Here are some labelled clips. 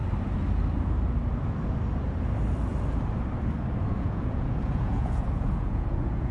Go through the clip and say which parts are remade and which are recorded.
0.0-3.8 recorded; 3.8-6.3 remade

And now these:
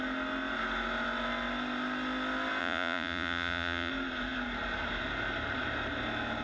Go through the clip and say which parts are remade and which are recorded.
0.0-2.6 recorded; 2.6-3.9 remade; 3.9-6.4 recorded

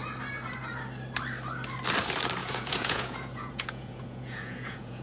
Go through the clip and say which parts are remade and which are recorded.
0.0-2.4 recorded; 2.4-5.0 remade

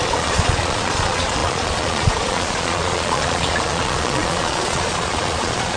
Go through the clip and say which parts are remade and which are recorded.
0.0-5.8 remade

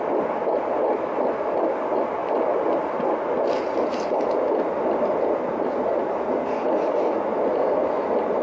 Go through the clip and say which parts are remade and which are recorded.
0.0-8.4 recorded

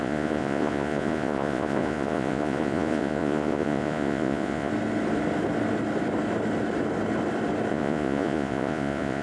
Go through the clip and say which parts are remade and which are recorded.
0.0-4.7 remade; 4.7-7.7 recorded; 7.7-9.2 remade

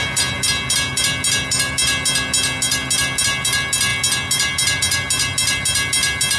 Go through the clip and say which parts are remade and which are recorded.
0.0-6.4 recorded